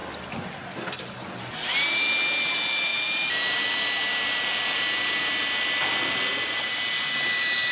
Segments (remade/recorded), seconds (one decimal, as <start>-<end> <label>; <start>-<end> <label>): 0.0-7.7 recorded

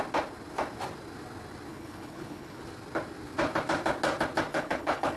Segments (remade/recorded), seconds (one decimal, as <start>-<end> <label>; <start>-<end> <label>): 0.0-1.7 recorded; 1.7-2.6 remade; 2.6-4.5 recorded; 4.5-5.2 remade

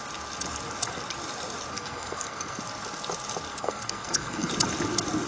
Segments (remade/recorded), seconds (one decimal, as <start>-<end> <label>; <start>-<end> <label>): 0.0-1.7 recorded; 1.7-2.6 remade; 2.6-3.5 recorded; 3.5-4.5 remade; 4.5-5.3 recorded

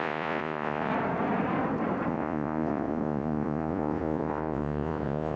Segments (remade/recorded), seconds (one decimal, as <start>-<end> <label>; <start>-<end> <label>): 0.0-0.9 remade; 0.9-2.1 recorded; 2.1-5.4 remade

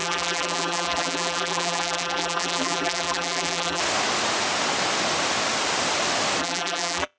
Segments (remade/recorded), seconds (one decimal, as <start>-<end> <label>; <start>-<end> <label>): 0.0-3.8 remade; 3.8-6.4 recorded; 6.4-7.2 remade

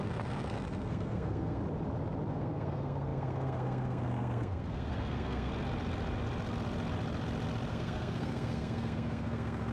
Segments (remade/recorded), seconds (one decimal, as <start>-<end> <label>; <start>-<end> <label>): 0.0-1.6 remade; 1.6-2.3 recorded; 2.3-5.5 remade; 5.5-7.7 recorded; 7.7-9.7 remade

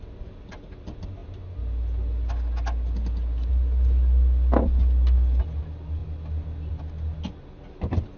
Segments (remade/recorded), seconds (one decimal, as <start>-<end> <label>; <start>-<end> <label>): 0.0-8.2 recorded